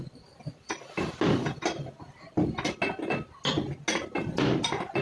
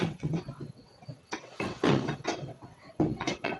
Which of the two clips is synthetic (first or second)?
second